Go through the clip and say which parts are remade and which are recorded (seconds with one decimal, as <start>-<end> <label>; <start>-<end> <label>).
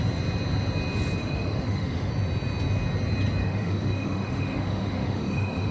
0.0-1.2 recorded; 1.2-2.1 remade; 2.1-3.4 recorded; 3.4-5.7 remade